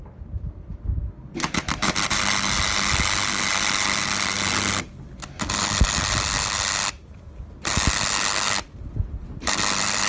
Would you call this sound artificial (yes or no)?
no